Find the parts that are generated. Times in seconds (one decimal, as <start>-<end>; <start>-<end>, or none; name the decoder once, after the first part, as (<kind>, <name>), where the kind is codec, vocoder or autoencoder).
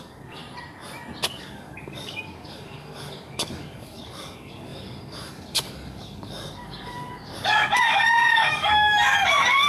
0.0-0.4 (codec, DAC); 1.4-9.7